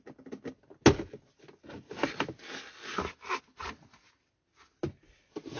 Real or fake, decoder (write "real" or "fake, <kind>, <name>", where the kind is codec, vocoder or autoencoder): real